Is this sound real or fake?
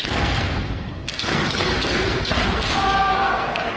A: fake